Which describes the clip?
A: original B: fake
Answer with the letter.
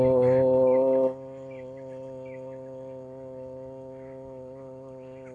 A